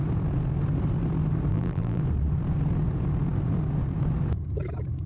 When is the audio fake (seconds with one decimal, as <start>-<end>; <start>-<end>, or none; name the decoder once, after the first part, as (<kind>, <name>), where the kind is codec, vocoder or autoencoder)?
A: 1.5-2.0 (vocoder, BigVGAN v2)